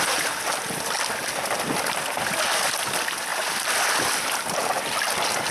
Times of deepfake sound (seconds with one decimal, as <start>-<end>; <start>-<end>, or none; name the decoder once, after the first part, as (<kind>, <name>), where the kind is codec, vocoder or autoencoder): none